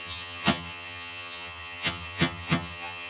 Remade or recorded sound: remade